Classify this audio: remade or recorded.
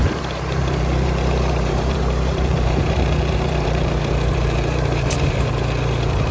remade